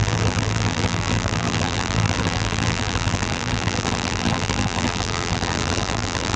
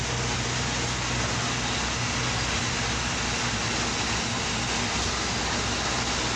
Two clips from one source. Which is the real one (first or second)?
second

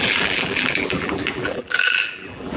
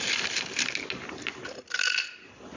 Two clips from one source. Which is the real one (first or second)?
second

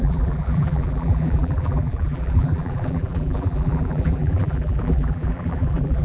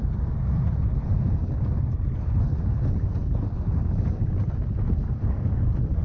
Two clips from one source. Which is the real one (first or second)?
second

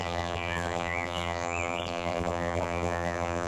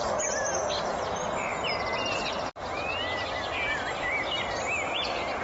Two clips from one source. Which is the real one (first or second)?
second